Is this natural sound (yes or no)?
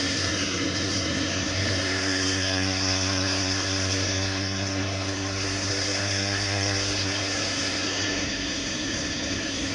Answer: no